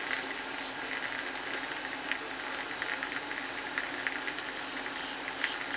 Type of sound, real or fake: real